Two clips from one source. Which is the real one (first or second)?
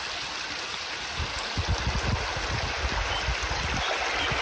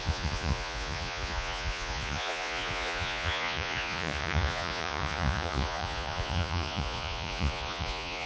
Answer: first